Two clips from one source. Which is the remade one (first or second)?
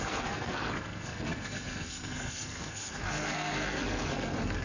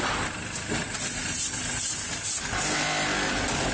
first